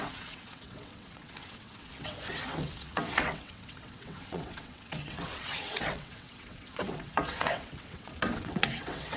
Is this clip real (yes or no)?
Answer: no